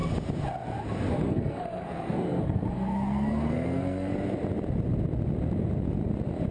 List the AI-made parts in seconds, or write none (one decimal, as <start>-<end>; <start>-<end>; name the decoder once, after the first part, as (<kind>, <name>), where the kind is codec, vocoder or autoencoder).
1.1-4.1 (codec, SNAC)